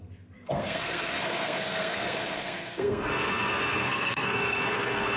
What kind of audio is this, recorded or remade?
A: remade